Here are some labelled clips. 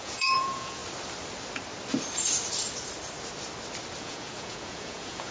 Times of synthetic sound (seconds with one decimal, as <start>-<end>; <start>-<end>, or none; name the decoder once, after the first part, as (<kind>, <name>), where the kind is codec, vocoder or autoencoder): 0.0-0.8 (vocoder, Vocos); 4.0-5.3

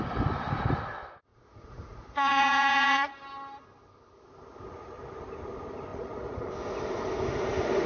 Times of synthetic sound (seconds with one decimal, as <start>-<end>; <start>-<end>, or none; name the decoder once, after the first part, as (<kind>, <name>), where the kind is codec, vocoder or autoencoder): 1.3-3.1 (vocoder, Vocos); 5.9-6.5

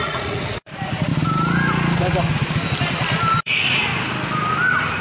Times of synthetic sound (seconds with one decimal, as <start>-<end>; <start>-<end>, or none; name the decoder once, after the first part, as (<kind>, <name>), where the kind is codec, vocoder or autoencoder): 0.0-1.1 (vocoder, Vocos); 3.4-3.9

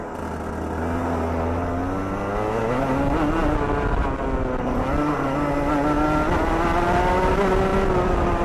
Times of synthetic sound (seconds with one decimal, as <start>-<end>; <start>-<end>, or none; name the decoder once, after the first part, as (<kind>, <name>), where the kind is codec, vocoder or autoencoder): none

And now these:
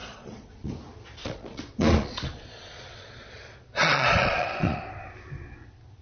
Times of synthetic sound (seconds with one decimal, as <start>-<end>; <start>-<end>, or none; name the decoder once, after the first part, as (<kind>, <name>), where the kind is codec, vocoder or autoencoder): 0.0-0.7 (vocoder, Vocos); 1.2-4.8